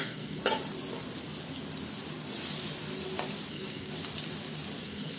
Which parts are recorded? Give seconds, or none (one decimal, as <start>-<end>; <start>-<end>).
0.4-3.5; 3.9-4.8

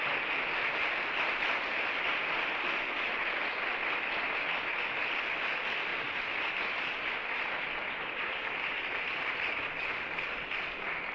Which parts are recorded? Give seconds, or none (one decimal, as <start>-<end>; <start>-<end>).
0.0-11.1